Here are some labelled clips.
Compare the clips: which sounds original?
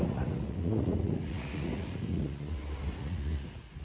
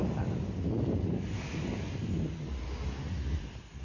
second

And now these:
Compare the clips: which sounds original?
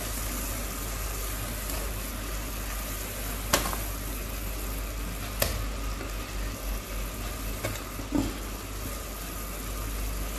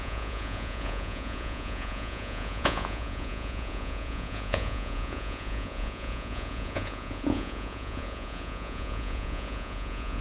first